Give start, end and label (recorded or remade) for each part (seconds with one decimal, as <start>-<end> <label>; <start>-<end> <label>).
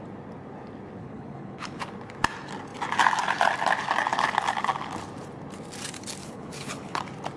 0.0-1.0 recorded; 1.0-1.8 remade; 1.8-6.2 recorded; 6.2-7.0 remade; 7.0-7.4 recorded